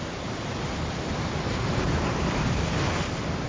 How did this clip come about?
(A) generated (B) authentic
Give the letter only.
A